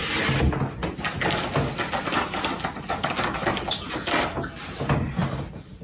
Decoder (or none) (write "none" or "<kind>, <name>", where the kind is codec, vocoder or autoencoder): none